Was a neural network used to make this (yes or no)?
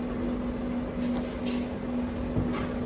no